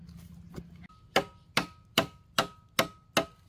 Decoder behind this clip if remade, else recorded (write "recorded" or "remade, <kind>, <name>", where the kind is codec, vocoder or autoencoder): recorded